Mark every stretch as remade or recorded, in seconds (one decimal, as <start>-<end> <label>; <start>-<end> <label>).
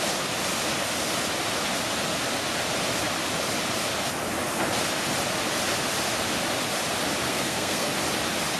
0.0-7.3 recorded; 7.3-7.9 remade; 7.9-8.6 recorded